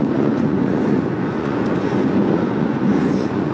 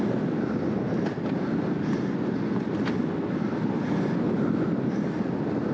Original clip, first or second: second